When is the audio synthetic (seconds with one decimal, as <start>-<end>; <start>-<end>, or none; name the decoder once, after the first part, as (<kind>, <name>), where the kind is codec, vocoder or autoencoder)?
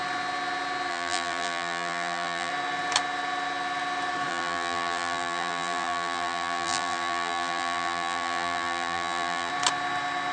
0.9-2.5 (vocoder, BigVGAN v2); 4.3-9.5